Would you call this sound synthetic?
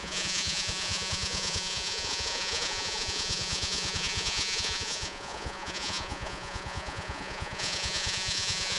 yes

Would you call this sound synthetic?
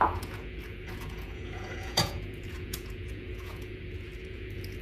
yes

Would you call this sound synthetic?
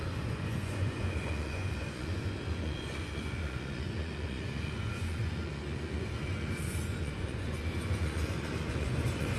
yes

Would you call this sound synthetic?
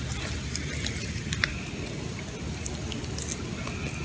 no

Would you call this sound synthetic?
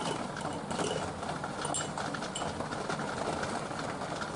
no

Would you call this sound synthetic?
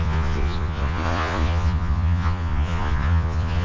yes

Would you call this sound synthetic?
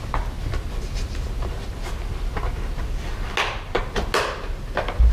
no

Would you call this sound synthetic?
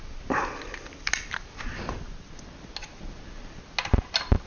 no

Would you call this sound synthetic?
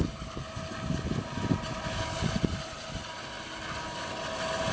no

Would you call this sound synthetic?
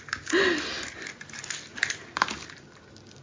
no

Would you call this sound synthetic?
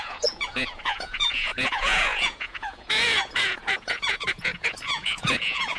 yes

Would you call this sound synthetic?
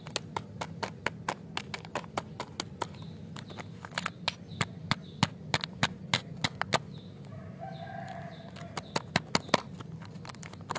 no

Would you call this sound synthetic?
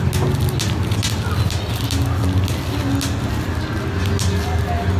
no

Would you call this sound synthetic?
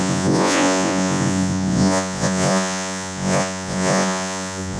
yes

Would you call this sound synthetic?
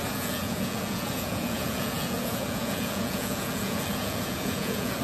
yes